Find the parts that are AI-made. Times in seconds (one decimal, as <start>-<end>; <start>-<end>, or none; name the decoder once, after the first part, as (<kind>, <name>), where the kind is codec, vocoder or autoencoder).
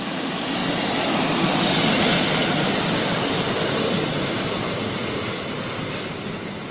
none